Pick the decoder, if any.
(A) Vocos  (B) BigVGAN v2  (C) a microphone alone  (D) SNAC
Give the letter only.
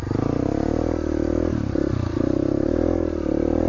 C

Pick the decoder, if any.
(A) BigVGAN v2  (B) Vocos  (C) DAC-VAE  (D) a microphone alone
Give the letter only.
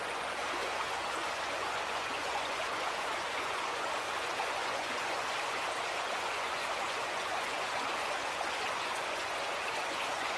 B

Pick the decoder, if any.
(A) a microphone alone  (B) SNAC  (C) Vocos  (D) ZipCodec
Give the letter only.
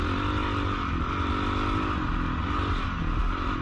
A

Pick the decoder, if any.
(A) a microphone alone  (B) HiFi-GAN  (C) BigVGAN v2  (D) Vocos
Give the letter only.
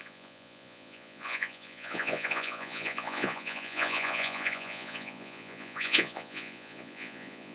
D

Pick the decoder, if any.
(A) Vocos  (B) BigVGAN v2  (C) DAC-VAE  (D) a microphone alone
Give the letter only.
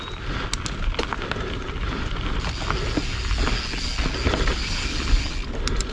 D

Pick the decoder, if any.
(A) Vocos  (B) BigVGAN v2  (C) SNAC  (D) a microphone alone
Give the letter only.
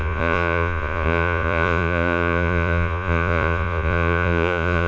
A